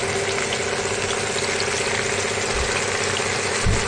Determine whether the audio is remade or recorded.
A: recorded